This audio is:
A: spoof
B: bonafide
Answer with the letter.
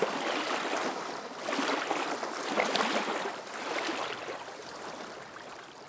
B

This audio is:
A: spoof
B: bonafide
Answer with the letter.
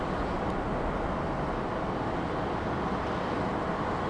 B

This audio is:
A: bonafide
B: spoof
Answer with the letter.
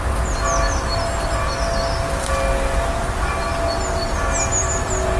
A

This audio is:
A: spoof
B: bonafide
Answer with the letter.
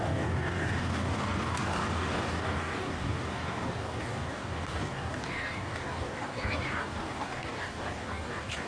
A